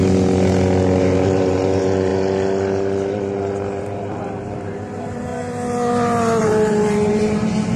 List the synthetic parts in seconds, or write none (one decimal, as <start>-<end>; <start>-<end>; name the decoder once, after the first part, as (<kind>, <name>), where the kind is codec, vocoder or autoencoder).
1.0-2.1 (vocoder, BigVGAN v2); 3.8-5.3; 6.4-7.8